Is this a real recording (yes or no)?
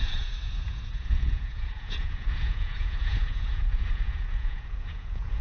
no